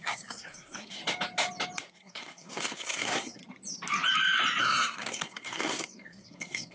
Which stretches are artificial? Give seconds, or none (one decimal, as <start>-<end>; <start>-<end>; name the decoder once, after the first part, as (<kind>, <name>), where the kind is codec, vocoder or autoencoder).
0.0-1.0 (codec, SNAC); 1.9-3.4; 4.6-6.7